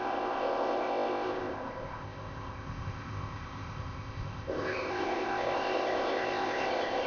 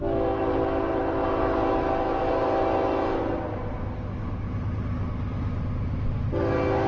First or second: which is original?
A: second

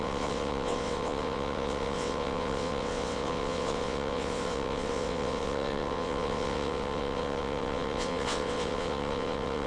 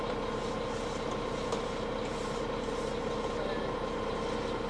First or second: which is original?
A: second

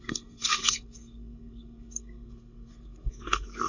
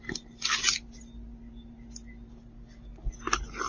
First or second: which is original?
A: second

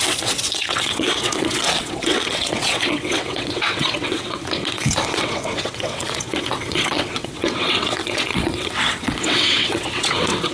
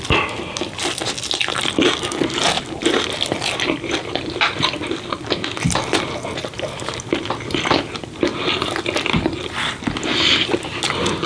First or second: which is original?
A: second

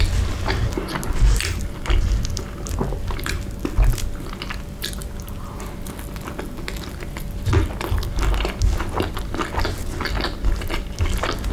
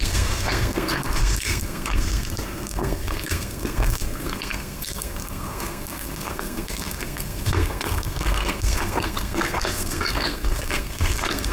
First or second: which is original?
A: first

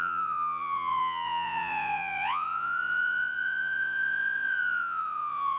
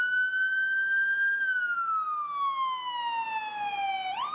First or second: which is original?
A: second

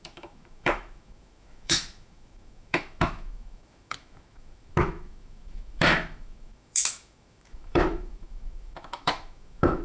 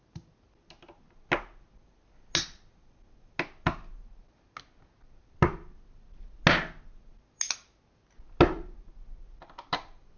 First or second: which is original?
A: second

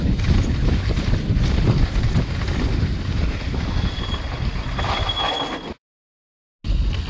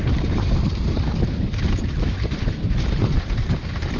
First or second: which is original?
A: first